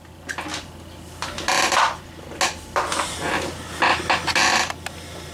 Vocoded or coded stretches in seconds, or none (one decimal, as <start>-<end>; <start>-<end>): none